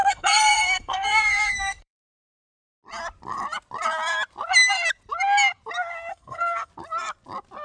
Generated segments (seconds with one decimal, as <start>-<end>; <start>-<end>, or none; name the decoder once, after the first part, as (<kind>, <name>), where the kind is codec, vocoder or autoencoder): 0.0-2.8 (codec, SNAC); 6.1-6.7